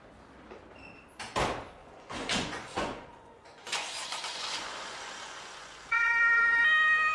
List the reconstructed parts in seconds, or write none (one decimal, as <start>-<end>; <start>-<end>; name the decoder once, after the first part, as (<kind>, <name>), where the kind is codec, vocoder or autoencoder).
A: 1.8-6.1 (vocoder, Vocos)